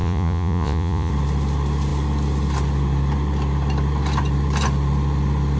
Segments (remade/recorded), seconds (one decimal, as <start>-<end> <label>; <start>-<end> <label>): 0.0-1.1 remade; 1.1-5.6 recorded